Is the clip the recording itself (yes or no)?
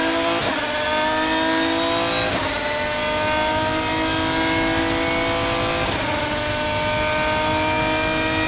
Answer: yes